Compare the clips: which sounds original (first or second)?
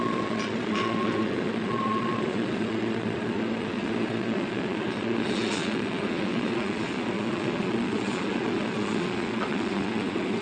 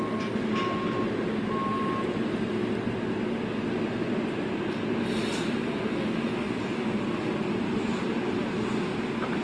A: second